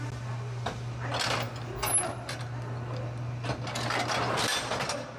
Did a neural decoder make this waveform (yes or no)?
no